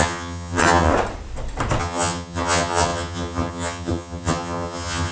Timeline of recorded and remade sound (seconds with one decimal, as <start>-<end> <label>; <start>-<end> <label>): 0.0-0.9 remade; 0.9-1.8 recorded; 1.8-5.1 remade